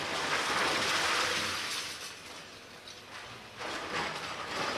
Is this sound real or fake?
real